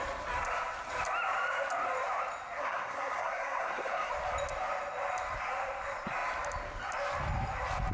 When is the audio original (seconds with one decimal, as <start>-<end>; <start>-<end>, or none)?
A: 0.0-2.6; 4.1-7.9